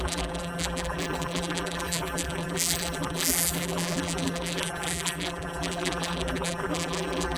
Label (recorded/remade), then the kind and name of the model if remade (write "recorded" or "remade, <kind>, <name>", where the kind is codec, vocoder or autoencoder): remade, vocoder, BigVGAN v2